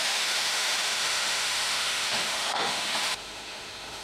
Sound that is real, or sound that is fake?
fake